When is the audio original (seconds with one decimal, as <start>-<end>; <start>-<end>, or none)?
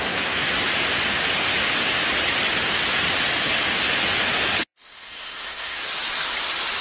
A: 0.5-4.6; 5.8-6.8